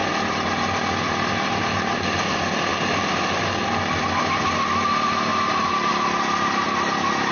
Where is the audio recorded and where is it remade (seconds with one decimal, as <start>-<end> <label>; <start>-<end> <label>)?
0.0-2.7 recorded; 2.7-4.1 remade; 4.1-5.3 recorded; 5.3-5.9 remade; 5.9-7.3 recorded